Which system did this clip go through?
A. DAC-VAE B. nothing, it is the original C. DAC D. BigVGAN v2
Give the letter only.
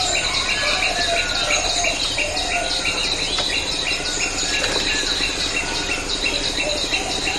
B